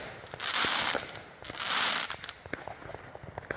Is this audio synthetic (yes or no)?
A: no